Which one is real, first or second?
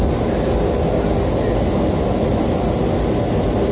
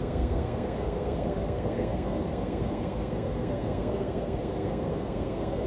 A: first